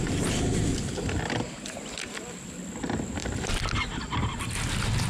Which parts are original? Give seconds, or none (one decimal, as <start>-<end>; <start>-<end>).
0.0-5.1